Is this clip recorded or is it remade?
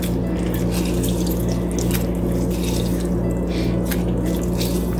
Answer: recorded